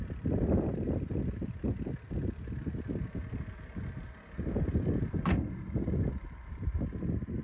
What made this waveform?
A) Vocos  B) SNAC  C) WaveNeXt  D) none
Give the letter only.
D